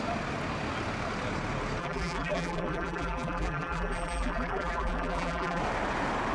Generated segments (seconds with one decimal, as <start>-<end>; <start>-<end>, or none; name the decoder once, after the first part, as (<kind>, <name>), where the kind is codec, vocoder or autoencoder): 1.8-5.6 (vocoder, BigVGAN v2)